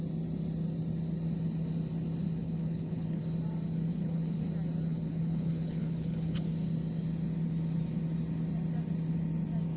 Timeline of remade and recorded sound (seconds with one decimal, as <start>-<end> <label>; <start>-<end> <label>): 0.0-2.4 recorded; 2.4-3.2 remade; 3.2-3.9 recorded; 3.9-4.4 remade; 4.4-4.9 recorded; 4.9-6.5 remade; 6.5-9.8 recorded